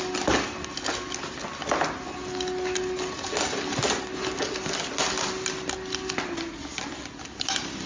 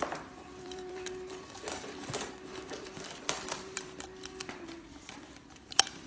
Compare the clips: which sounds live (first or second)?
first